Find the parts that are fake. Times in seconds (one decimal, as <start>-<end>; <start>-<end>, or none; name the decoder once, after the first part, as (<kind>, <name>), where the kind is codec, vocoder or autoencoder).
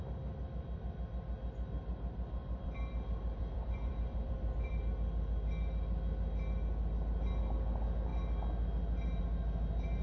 2.4-4.8 (vocoder, BigVGAN v2)